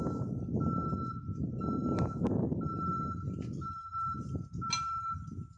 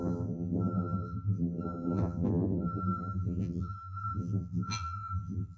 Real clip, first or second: first